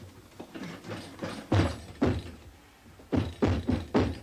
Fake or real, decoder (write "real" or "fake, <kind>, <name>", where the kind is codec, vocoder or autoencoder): real